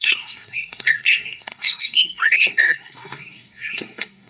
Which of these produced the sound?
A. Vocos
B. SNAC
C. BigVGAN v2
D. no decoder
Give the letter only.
B